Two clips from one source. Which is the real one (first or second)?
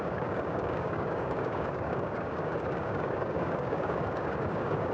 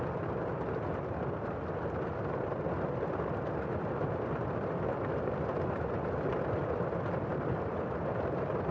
second